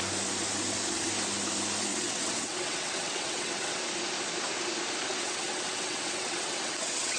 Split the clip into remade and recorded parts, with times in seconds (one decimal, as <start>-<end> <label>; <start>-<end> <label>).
0.0-1.9 recorded; 1.9-3.8 remade; 3.8-5.1 recorded; 5.1-7.2 remade